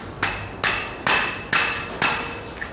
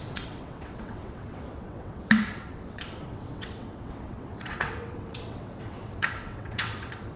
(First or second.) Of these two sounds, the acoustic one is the first